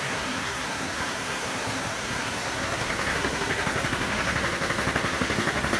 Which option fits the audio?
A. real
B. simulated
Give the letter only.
B